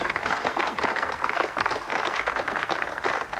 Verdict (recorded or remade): remade